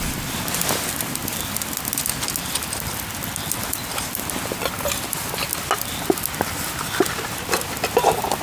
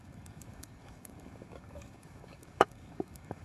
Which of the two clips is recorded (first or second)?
first